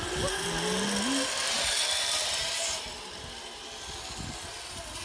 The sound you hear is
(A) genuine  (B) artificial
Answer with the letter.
A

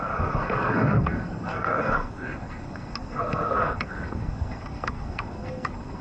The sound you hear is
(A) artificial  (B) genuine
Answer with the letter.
A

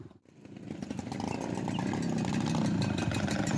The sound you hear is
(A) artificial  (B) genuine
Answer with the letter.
B